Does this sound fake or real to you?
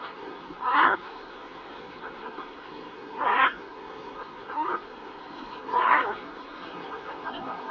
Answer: fake